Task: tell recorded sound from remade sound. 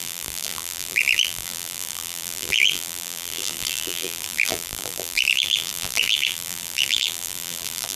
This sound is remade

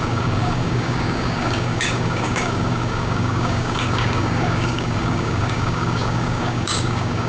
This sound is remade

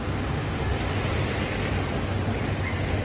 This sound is recorded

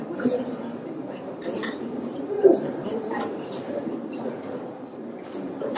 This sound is remade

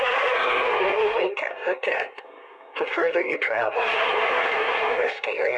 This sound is remade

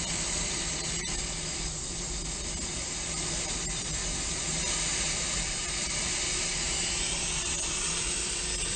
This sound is recorded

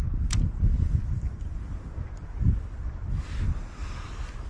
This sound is recorded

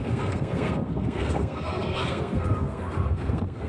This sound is remade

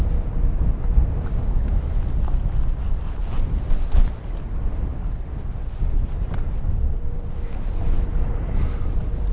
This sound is recorded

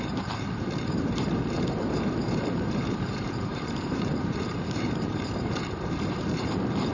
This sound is remade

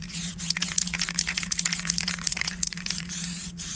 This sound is remade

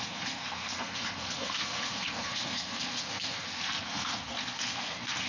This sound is remade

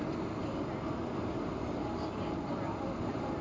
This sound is recorded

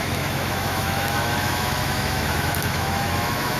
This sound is remade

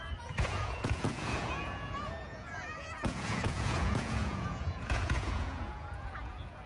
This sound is remade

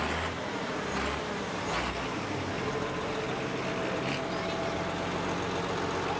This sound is recorded